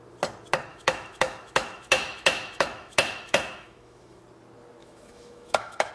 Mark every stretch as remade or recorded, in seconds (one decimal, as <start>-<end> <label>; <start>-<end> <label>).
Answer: 0.0-0.7 recorded; 0.7-4.2 remade; 4.2-4.8 recorded; 4.8-5.9 remade